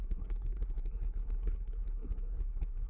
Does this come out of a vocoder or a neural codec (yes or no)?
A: yes